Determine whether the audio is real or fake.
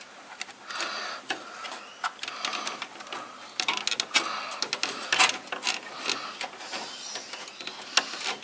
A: real